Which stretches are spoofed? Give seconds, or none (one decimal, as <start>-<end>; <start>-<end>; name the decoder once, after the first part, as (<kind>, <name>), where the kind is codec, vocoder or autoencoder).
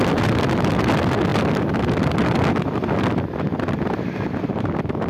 1.3-4.4 (vocoder, BigVGAN v2)